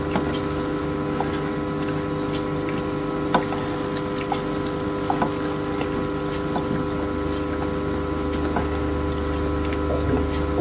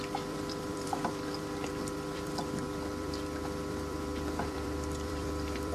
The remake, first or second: second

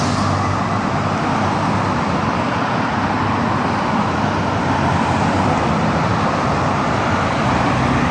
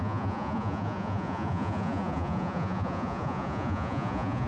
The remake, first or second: second